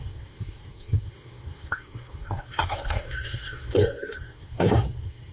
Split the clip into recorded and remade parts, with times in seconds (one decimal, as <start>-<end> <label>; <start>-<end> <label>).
0.0-5.3 remade